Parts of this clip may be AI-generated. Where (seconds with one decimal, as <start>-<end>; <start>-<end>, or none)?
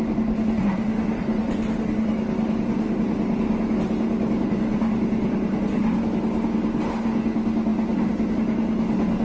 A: none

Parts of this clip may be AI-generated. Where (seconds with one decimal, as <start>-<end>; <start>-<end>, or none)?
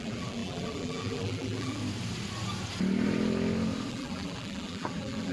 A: 0.0-1.8; 3.9-5.3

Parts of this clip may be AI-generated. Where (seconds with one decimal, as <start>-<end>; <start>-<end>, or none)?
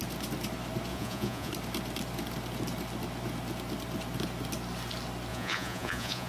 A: 0.9-1.5; 5.3-6.3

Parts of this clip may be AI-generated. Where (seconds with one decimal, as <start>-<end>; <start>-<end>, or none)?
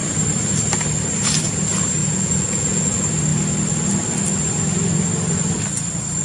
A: 2.0-2.9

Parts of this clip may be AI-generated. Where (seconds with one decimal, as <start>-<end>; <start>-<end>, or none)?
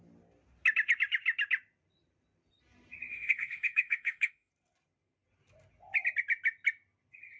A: 3.1-4.5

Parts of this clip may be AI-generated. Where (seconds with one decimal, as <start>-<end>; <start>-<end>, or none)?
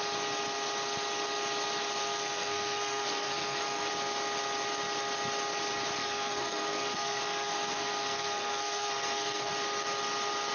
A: 2.0-3.9; 6.0-9.5